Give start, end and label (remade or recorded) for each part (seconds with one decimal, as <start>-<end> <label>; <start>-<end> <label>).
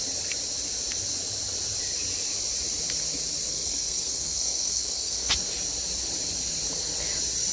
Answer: 0.0-3.5 recorded; 3.5-5.3 remade; 5.3-7.5 recorded